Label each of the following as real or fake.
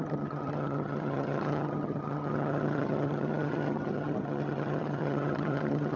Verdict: fake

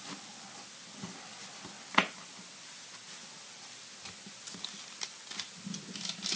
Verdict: real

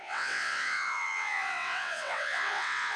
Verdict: fake